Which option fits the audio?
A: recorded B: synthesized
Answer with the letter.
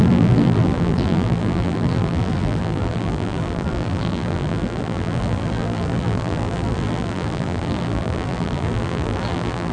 B